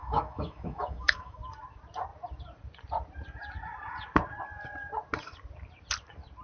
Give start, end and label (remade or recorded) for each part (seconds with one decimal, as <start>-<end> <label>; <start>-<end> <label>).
0.0-1.4 remade; 1.4-6.4 recorded